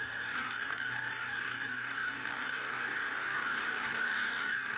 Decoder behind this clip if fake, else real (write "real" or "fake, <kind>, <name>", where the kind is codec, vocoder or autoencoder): fake, codec, DAC